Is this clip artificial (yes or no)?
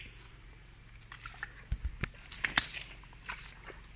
no